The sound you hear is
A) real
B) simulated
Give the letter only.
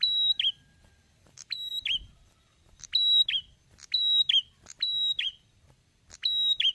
A